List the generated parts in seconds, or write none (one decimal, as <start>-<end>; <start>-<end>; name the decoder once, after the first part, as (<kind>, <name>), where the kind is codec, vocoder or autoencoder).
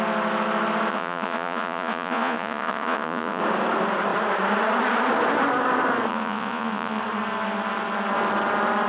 0.9-3.4 (vocoder, Vocos); 6.1-7.0